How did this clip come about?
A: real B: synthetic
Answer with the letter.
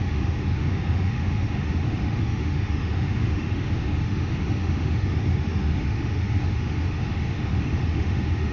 B